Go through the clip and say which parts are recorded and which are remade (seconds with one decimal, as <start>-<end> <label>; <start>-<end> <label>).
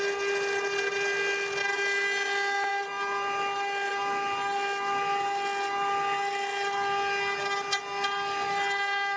0.0-9.2 recorded